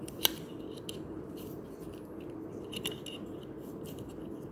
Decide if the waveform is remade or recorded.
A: recorded